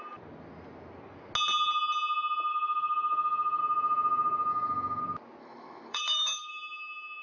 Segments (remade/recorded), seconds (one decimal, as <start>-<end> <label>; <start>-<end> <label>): 0.0-2.5 recorded; 2.5-3.6 remade; 3.6-4.5 recorded; 4.5-5.0 remade; 5.0-5.4 recorded; 5.4-6.5 remade; 6.5-7.2 recorded